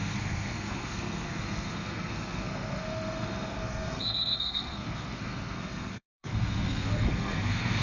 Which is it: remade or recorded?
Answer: remade